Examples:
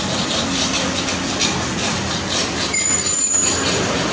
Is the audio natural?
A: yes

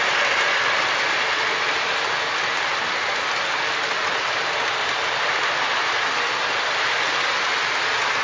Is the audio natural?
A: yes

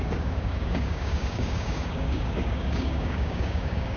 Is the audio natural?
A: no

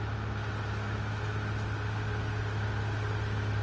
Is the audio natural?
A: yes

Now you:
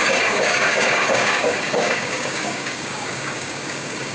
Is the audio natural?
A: no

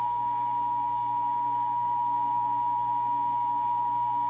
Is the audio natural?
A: no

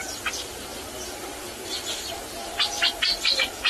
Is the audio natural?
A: yes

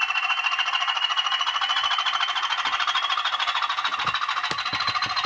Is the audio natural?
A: yes